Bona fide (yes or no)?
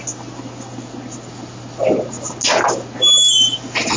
yes